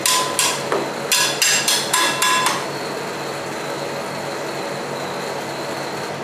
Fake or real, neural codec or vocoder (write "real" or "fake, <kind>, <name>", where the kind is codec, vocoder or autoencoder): real